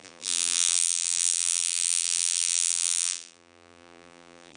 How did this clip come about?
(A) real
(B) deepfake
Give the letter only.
B